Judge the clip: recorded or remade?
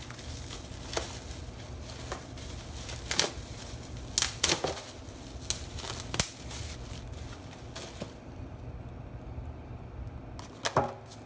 recorded